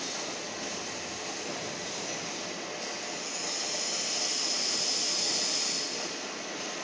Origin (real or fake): real